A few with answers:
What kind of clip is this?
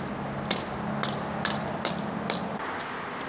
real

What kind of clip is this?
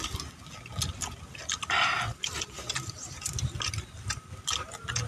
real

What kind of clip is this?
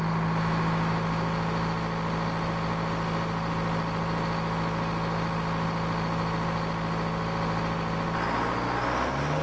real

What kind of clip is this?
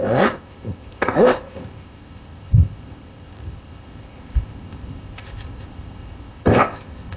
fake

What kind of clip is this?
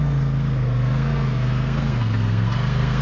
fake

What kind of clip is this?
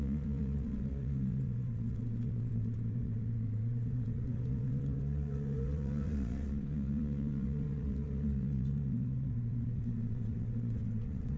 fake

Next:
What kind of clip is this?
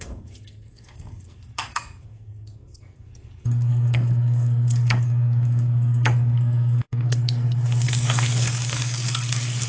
fake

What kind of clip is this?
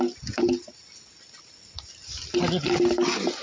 real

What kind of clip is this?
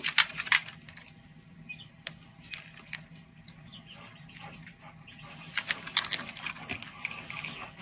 real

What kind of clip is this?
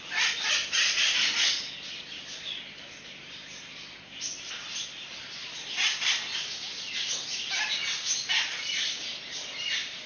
real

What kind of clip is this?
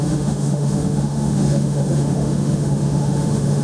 fake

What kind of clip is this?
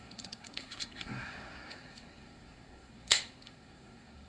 fake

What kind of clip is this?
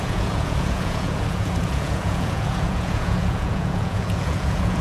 fake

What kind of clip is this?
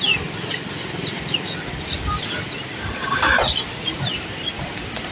real